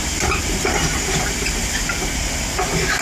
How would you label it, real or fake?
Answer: real